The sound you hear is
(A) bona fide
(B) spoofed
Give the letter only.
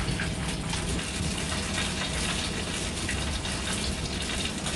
A